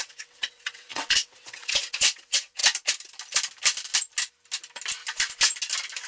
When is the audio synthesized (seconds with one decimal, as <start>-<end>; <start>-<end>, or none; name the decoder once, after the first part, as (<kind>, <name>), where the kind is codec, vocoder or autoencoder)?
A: 0.0-2.6 (vocoder, WaveNeXt)